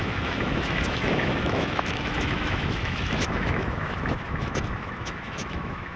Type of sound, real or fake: fake